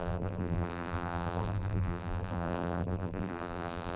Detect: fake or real fake